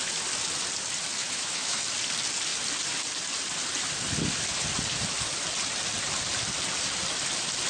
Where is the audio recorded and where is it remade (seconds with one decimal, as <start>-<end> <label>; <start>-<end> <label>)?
0.0-1.2 recorded; 1.2-1.8 remade; 1.8-7.7 recorded